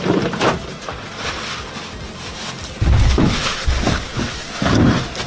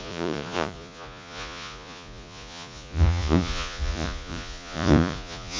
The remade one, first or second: second